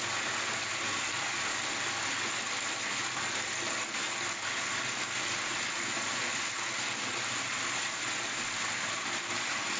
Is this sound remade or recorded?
recorded